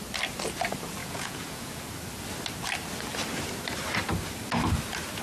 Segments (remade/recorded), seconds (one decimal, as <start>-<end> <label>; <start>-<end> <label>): 0.0-1.0 recorded; 1.0-1.8 remade; 1.8-5.2 recorded